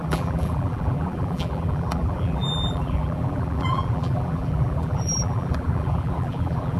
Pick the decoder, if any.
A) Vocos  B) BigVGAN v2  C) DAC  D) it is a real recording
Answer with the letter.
B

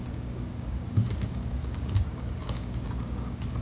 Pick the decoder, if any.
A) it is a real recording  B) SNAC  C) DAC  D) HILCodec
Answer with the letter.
C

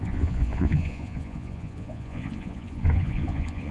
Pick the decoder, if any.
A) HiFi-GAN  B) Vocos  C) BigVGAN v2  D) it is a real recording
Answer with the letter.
B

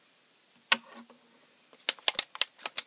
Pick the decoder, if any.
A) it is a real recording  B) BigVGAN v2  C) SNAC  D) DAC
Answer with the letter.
A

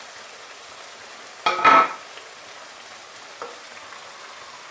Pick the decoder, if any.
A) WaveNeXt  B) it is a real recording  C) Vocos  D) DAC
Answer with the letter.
B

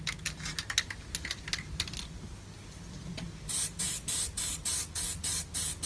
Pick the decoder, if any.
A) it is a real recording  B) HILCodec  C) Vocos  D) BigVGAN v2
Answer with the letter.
A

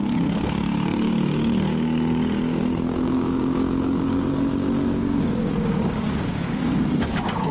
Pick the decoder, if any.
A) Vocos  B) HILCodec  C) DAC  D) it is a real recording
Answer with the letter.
C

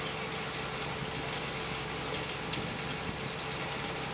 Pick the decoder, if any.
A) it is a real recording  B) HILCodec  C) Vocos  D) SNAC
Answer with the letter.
A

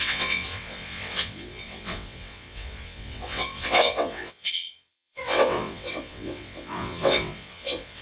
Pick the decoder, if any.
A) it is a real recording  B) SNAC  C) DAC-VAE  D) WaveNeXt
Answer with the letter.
D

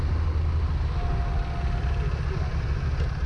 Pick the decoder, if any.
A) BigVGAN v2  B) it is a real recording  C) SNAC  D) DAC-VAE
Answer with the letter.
B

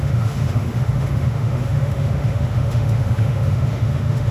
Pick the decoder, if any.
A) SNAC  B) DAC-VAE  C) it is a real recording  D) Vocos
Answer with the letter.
B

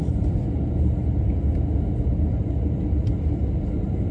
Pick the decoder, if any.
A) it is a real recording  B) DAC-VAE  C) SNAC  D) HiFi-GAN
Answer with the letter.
A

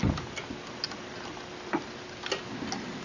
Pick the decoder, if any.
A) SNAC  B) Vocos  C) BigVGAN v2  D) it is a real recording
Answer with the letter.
D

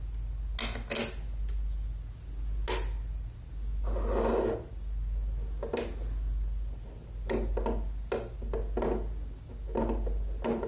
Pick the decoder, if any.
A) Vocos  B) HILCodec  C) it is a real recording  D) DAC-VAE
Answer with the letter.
C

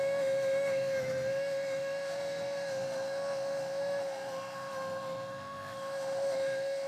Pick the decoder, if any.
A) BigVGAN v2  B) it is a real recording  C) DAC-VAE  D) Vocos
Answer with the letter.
C